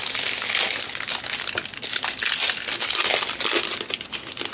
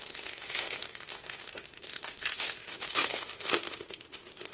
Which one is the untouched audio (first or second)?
first